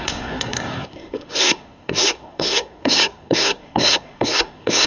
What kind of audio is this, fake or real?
fake